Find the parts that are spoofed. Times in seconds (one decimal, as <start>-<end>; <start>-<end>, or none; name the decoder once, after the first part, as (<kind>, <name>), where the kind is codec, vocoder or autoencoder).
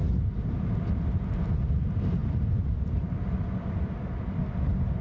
none